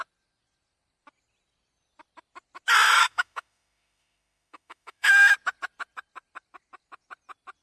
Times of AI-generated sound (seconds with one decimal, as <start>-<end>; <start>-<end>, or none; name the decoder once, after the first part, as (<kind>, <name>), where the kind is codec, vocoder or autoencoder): 3.0-5.1 (autoencoder, DAC-VAE)